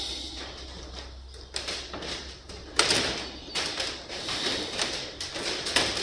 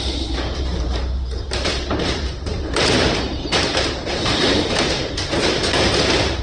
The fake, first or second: second